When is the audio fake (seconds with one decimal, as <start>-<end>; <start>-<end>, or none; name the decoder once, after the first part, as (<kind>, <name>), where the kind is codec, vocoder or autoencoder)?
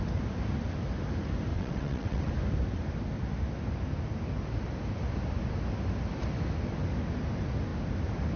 1.5-2.3 (vocoder, WaveNeXt)